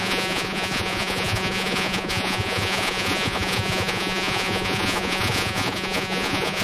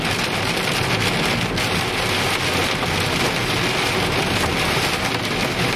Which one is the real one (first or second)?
second